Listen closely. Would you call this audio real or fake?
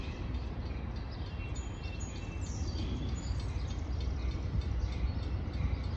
real